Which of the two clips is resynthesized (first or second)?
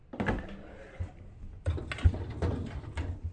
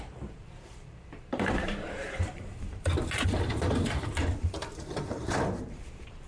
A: second